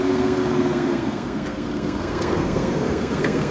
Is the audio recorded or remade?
remade